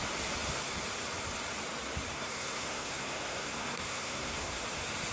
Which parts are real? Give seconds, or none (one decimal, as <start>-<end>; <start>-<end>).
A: 0.0-2.1; 4.6-5.1